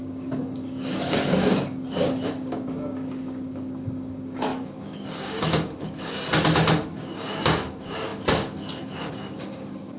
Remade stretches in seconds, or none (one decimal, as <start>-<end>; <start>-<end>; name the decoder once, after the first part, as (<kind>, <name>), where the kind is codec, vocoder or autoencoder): 0.0-6.3 (codec, DAC); 6.8-10.0